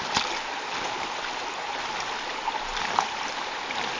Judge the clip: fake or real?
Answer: real